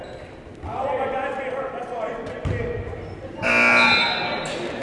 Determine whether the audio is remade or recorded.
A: recorded